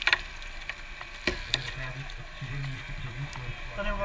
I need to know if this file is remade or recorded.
recorded